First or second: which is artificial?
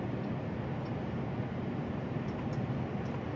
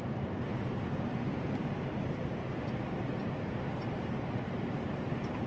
second